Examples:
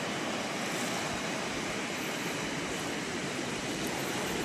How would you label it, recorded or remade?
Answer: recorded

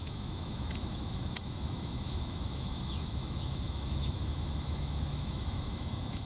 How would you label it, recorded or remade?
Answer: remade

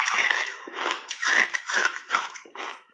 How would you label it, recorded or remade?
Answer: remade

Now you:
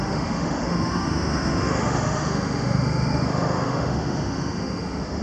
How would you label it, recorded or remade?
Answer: remade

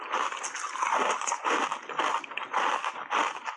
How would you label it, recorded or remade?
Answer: recorded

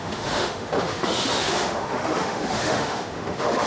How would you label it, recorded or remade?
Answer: remade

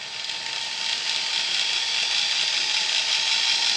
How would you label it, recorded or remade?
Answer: recorded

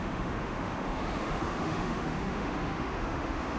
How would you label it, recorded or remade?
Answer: remade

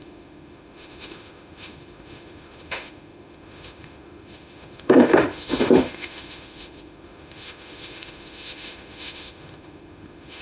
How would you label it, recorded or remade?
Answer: remade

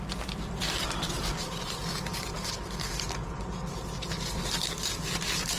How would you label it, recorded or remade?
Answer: recorded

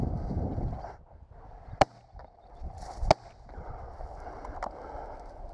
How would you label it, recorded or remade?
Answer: recorded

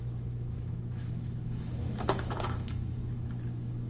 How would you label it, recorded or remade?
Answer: remade